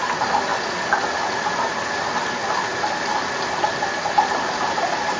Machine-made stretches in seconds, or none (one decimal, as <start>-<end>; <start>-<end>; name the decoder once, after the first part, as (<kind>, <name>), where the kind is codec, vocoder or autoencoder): none